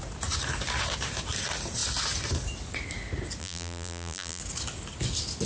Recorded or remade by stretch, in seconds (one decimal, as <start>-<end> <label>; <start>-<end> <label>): 0.0-3.4 recorded; 3.4-4.4 remade; 4.4-5.5 recorded